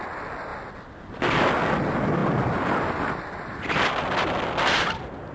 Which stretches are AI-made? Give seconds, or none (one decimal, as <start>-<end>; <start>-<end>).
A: none